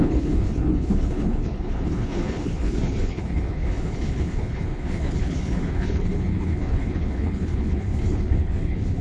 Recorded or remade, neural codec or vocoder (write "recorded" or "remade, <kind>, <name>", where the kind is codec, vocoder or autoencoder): remade, codec, HILCodec